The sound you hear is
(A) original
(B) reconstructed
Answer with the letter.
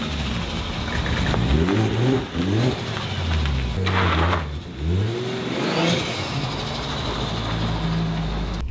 A